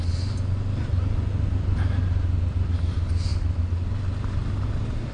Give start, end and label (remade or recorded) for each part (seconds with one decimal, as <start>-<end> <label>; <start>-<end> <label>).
0.0-5.1 recorded